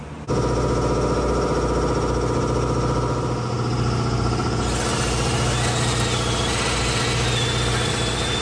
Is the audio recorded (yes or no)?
yes